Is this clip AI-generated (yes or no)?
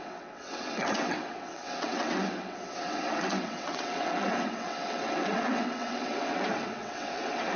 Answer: yes